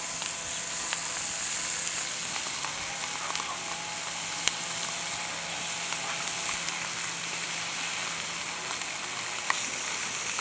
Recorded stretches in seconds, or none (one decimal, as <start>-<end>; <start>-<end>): 0.0-10.4